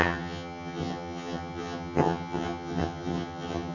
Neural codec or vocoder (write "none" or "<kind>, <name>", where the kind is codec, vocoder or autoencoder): vocoder, HiFi-GAN